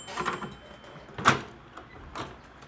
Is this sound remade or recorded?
recorded